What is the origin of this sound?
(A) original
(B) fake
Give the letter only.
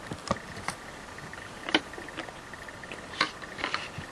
A